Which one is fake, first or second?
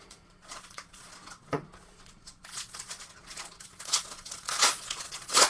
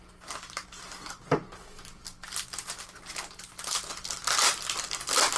first